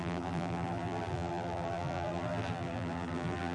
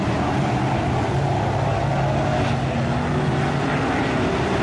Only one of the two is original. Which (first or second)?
second